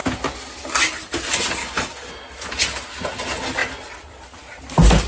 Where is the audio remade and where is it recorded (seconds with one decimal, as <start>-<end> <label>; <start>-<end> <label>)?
0.0-1.6 recorded; 1.6-2.1 remade; 2.1-5.1 recorded